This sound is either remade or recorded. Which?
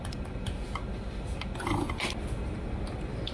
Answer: recorded